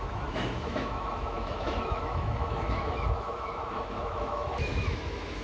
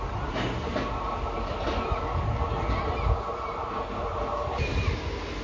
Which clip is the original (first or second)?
second